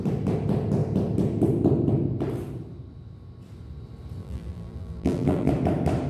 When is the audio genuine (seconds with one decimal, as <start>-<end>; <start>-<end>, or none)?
0.0-4.2; 5.5-6.1

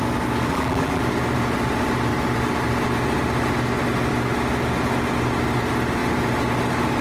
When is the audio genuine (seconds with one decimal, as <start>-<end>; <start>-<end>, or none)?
0.0-0.5; 1.0-7.0